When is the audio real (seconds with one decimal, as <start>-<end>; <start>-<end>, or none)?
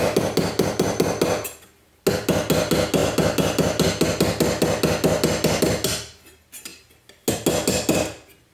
0.0-8.5